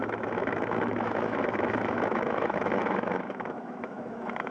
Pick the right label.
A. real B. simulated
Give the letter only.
B